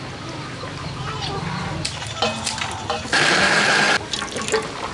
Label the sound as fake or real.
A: real